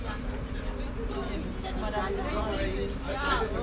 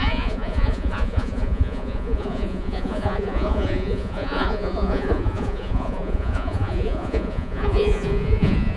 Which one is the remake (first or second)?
second